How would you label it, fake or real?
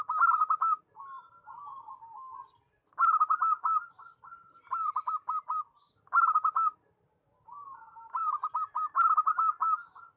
real